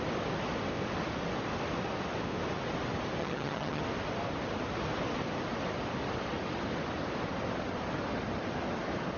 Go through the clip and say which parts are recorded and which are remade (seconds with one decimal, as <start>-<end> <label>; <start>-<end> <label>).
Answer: 0.0-3.2 recorded; 3.2-3.8 remade; 3.8-9.2 recorded